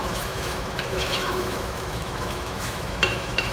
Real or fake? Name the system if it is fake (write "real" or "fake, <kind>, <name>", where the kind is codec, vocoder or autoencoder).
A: fake, autoencoder, DAC-VAE